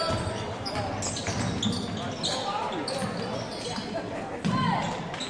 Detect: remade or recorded recorded